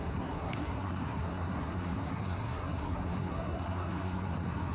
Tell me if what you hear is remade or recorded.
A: remade